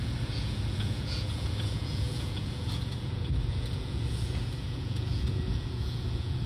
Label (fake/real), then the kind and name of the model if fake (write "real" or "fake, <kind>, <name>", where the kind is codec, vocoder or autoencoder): fake, vocoder, Vocos